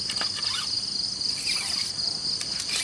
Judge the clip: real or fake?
real